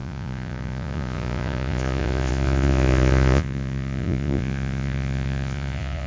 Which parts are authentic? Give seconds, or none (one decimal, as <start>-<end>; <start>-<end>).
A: none